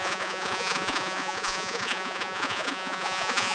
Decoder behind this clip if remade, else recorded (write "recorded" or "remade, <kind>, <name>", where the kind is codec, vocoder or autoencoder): remade, vocoder, Vocos